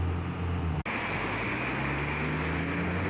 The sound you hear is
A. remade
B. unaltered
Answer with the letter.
B